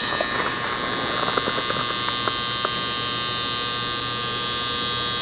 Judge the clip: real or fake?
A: real